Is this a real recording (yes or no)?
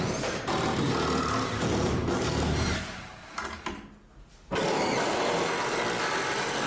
yes